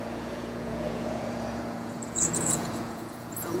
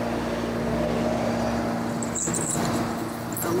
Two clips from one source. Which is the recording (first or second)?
second